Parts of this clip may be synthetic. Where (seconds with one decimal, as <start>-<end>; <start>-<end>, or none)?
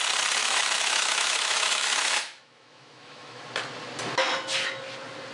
0.4-3.4